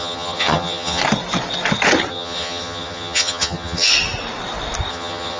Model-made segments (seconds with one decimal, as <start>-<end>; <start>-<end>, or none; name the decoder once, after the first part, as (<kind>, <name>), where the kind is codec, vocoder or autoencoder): 0.0-1.0 (vocoder, HiFi-GAN); 2.1-3.9; 4.9-5.4